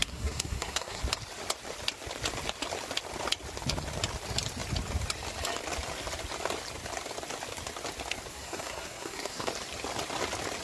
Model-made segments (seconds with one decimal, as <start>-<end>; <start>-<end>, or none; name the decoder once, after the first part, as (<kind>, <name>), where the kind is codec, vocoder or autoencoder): 0.0-1.0 (codec, SNAC); 8.3-9.5